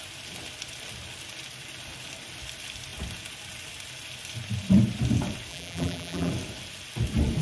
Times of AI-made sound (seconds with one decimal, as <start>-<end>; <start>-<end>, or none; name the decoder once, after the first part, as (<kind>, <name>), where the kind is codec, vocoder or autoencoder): 5.5-6.3 (vocoder, BigVGAN v2)